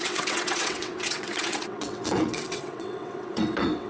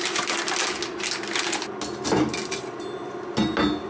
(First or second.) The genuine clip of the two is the second